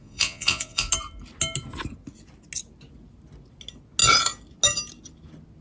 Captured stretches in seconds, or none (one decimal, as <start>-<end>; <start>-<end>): 0.9-5.6